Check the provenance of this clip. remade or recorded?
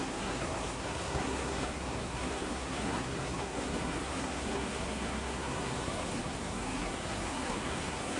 remade